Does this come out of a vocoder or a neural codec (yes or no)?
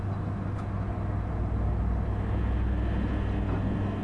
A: no